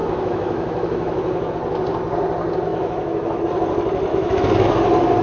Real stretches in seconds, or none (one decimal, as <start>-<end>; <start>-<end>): 1.5-2.7; 3.4-4.1; 4.7-5.2